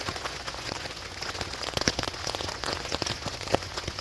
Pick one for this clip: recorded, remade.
remade